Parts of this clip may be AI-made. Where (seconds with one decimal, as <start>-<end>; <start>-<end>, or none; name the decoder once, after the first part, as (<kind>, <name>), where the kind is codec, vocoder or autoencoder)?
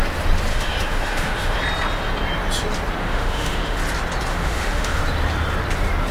0.5-1.6 (autoencoder, DAC-VAE); 3.0-3.8; 4.3-5.0